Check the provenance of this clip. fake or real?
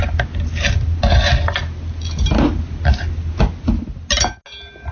real